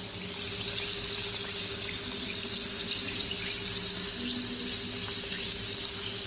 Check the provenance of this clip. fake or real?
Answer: real